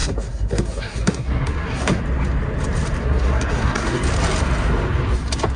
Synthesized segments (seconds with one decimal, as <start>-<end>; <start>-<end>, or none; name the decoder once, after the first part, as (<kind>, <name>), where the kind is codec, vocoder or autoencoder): 0.0-2.0 (codec, SNAC); 3.0-4.0